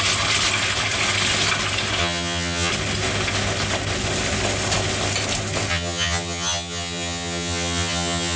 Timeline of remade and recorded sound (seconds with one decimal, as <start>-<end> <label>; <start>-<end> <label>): 0.0-2.0 recorded; 2.0-2.7 remade; 2.7-5.7 recorded; 5.7-8.4 remade